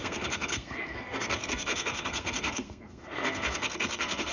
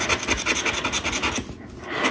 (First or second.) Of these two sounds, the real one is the second